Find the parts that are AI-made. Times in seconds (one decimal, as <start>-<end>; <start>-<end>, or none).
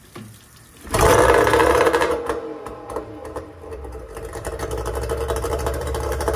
1.6-2.2; 3.2-6.4